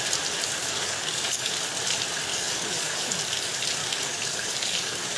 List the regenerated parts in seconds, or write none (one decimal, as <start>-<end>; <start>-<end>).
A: 0.6-1.5; 2.3-3.1; 3.8-5.2